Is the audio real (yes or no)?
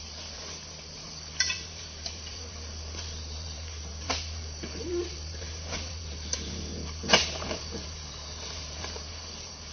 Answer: no